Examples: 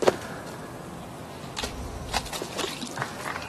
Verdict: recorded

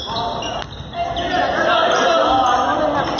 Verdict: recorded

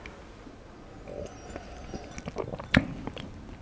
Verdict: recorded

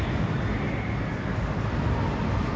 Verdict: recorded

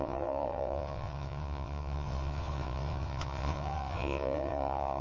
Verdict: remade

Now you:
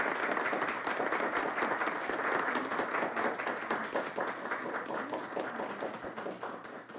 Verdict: recorded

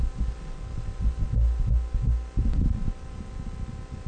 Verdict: recorded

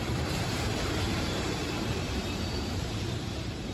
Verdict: remade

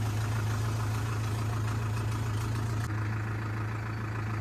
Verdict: recorded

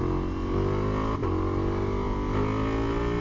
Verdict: recorded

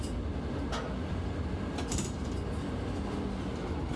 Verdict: recorded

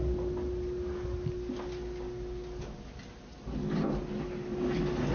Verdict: recorded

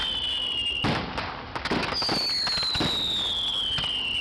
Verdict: recorded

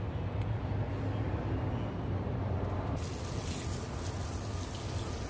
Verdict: recorded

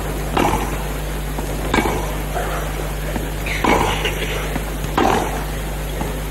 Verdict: recorded